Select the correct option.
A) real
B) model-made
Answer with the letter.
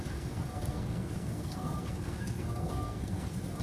B